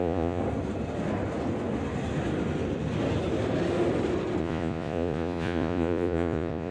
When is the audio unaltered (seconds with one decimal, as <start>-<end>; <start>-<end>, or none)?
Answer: 0.4-4.4